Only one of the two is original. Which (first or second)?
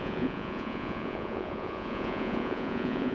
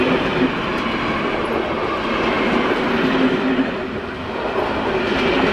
second